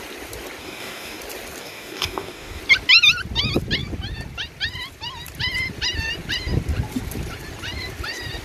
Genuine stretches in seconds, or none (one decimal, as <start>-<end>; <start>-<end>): 0.0-0.6; 1.2-1.6; 2.6-8.4

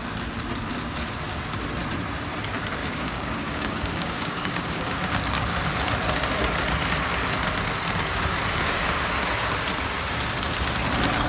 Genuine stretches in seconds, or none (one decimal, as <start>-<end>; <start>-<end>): 0.0-2.8; 5.2-11.3

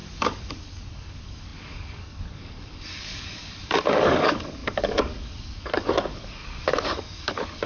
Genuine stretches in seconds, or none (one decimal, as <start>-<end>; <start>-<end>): none

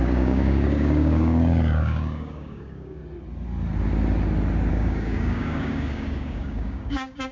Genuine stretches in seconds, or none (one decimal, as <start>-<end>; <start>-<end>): 3.0-4.7

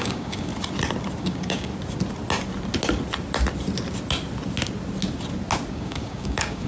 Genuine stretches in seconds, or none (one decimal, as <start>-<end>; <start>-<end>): 0.5-1.2; 1.7-5.7

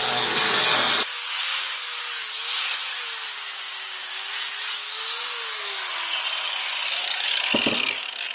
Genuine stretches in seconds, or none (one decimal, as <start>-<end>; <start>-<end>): 0.0-1.1; 2.1-3.7; 4.3-4.8; 5.6-8.3

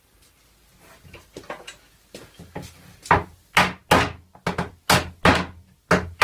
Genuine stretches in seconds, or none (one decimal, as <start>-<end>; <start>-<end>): 0.0-6.2